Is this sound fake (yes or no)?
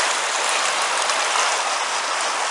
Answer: no